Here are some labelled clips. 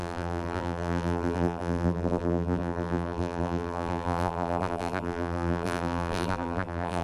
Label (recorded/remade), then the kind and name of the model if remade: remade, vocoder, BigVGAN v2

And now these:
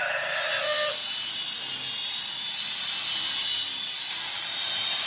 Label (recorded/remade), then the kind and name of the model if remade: recorded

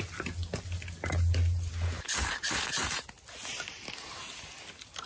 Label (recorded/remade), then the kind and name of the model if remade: recorded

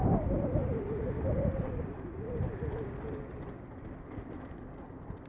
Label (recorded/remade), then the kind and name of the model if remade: recorded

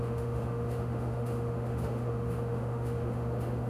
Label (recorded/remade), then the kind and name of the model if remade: remade, autoencoder, DAC-VAE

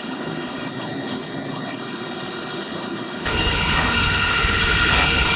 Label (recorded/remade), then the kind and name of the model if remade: remade, codec, HILCodec